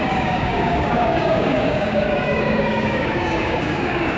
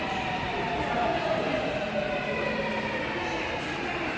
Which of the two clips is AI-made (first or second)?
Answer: first